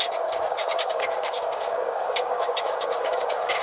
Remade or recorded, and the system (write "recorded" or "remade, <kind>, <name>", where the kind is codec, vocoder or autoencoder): remade, codec, DAC